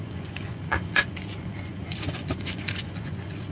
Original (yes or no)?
no